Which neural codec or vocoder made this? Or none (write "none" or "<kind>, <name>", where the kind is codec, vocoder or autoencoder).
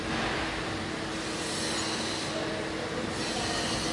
none